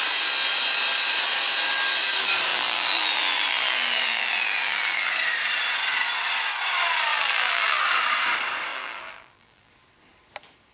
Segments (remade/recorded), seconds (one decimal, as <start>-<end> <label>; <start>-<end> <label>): 0.0-2.5 recorded; 2.5-5.1 remade; 5.1-7.1 recorded; 7.1-7.8 remade; 7.8-8.7 recorded; 8.7-9.7 remade; 9.7-10.7 recorded